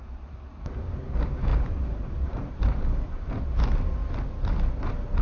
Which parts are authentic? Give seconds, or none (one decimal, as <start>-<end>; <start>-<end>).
0.8-1.5; 3.3-5.2